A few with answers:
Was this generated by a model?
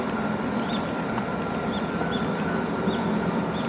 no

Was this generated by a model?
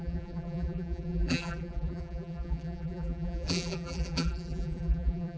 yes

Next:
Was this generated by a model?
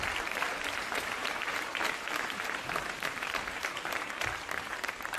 yes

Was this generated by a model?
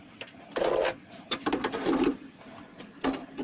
no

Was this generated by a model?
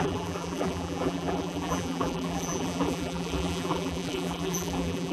yes